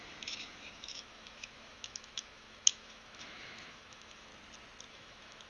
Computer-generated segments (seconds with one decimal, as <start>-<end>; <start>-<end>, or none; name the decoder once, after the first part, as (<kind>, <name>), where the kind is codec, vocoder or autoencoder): 0.0-4.3 (autoencoder, DAC-VAE); 4.9-5.5